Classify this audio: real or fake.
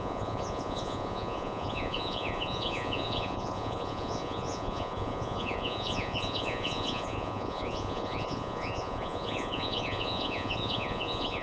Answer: fake